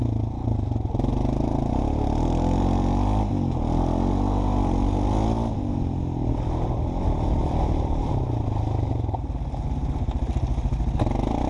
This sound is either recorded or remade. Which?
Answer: recorded